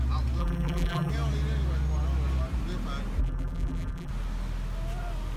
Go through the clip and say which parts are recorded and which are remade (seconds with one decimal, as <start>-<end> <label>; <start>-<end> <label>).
0.0-0.4 recorded; 0.4-1.1 remade; 1.1-3.2 recorded; 3.2-4.1 remade; 4.1-5.4 recorded